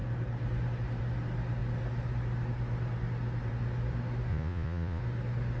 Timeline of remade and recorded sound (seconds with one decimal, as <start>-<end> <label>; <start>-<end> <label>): 0.0-4.3 recorded; 4.3-5.0 remade; 5.0-5.6 recorded